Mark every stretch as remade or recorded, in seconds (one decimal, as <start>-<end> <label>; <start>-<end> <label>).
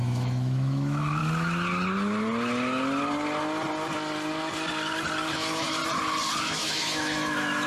0.0-1.2 remade; 1.2-5.3 recorded; 5.3-5.8 remade; 5.8-6.4 recorded; 6.4-7.7 remade